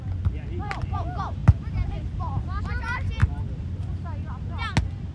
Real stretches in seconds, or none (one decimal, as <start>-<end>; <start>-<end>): 0.0-5.1